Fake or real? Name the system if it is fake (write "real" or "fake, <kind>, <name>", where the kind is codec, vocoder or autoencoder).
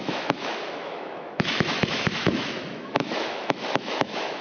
fake, autoencoder, DAC-VAE